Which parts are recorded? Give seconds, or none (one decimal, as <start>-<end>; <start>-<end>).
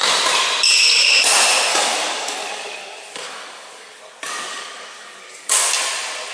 0.0-1.7; 4.0-4.5; 5.7-6.3